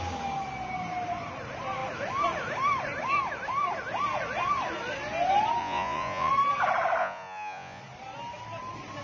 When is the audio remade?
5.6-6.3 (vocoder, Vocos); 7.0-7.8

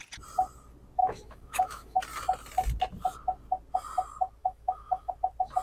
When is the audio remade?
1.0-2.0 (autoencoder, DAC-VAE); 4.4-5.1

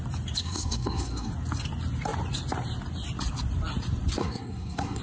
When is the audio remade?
0.4-1.3 (codec, SNAC); 4.2-5.0

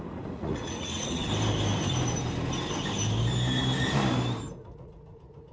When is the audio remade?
0.0-1.2 (vocoder, Vocos); 4.5-5.5